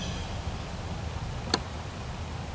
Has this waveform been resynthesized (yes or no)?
no